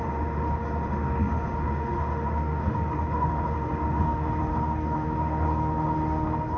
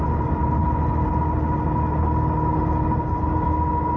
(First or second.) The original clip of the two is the second